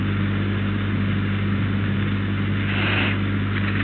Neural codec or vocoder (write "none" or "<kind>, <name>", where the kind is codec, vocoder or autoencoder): none